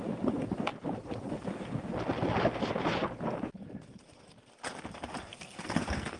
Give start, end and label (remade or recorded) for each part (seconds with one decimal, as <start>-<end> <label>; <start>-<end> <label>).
0.0-5.3 recorded; 5.3-6.2 remade